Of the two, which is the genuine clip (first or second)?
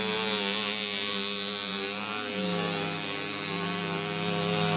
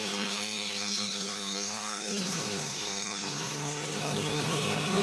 first